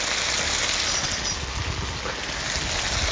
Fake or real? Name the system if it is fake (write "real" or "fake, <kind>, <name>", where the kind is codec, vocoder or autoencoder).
real